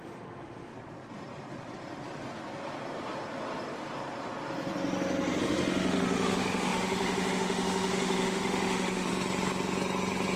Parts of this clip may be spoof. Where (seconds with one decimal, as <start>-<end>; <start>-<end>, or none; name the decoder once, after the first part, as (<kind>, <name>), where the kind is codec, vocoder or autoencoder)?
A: 0.0-0.7 (autoencoder, DAC-VAE); 5.4-9.1